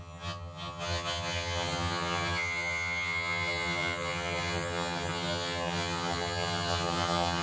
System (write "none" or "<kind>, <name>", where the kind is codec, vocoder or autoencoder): vocoder, HiFi-GAN